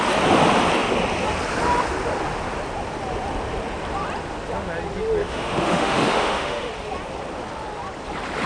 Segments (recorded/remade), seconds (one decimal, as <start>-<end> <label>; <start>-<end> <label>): 0.0-5.2 recorded; 5.2-6.7 remade; 6.7-8.5 recorded